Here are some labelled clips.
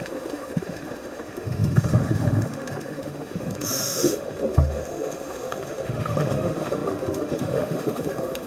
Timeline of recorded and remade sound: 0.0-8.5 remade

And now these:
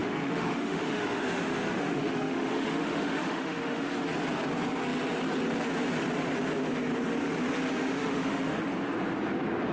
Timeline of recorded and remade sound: 0.0-3.9 remade; 3.9-7.7 recorded; 7.7-8.6 remade; 8.6-9.7 recorded

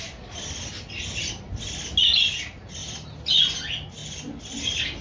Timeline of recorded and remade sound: 0.0-5.0 recorded

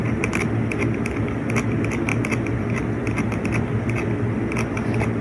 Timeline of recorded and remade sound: 0.0-5.2 recorded

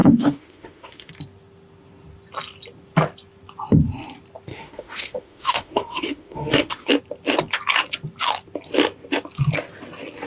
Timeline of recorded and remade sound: 0.0-1.1 remade; 1.1-4.5 recorded; 4.5-6.9 remade; 6.9-10.3 recorded

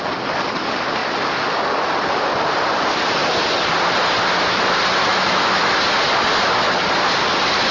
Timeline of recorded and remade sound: 0.0-5.0 recorded; 5.0-5.6 remade; 5.6-7.7 recorded